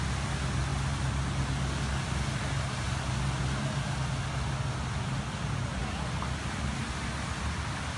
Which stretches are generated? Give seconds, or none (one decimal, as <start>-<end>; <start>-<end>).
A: none